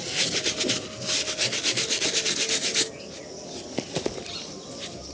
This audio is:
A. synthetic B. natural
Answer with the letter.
B